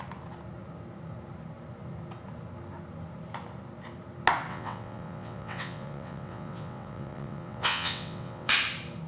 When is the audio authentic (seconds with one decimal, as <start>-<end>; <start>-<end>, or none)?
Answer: 0.0-4.5; 8.5-9.1